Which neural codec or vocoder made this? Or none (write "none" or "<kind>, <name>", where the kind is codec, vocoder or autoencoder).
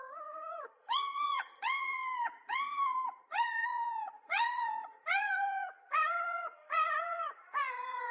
vocoder, Vocos